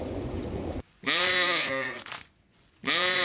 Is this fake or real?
fake